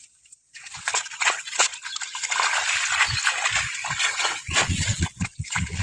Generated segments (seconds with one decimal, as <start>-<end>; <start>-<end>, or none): 0.0-1.7; 4.0-5.8